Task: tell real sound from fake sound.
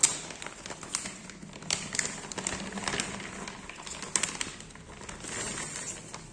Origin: real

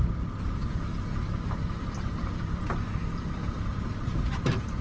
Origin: real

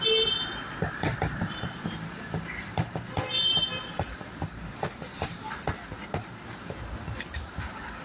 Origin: fake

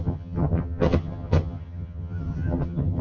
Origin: fake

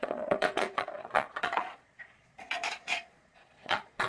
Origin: fake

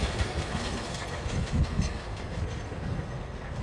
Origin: fake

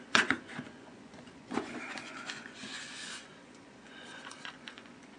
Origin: fake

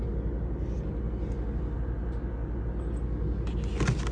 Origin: real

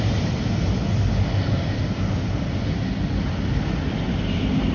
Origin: real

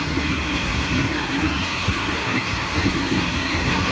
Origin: fake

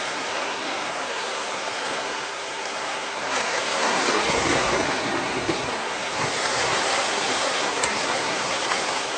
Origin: fake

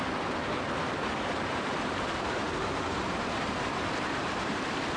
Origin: fake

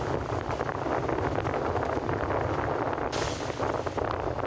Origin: real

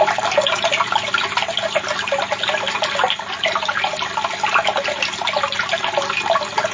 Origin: real